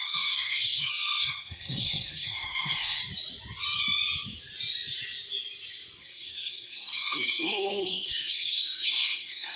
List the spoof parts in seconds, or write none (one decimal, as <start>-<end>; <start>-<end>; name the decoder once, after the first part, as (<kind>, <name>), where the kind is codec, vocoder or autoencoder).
0.0-3.0 (codec, SNAC); 6.0-9.6